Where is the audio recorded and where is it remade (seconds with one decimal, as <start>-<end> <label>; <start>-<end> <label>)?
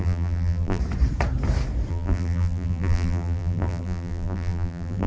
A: 0.0-0.8 remade; 0.8-1.9 recorded; 1.9-5.1 remade